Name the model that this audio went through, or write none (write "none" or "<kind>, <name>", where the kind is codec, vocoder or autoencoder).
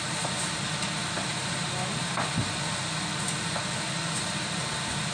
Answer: none